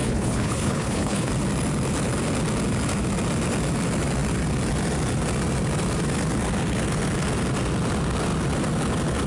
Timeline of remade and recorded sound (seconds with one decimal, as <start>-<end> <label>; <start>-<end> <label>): 0.0-1.3 remade; 1.3-9.3 recorded